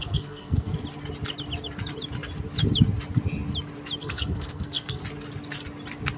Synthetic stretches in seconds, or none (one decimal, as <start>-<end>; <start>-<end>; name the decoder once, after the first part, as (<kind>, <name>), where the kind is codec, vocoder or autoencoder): 0.0-0.7 (codec, SNAC); 4.0-5.0